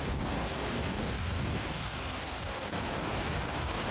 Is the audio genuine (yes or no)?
no